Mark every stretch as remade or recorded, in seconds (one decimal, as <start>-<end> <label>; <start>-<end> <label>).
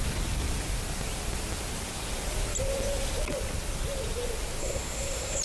0.0-4.6 recorded; 4.6-5.4 remade